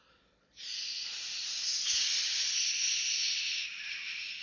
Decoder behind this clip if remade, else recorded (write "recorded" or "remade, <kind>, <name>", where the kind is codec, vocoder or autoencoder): recorded